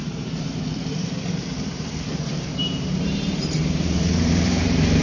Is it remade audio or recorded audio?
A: remade